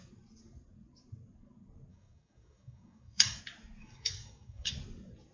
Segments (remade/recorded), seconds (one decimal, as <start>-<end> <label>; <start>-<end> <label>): 0.0-1.9 recorded; 1.9-3.4 remade; 3.4-3.8 recorded; 3.8-4.7 remade; 4.7-5.3 recorded